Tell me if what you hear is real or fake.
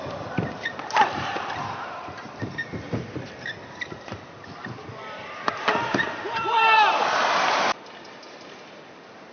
fake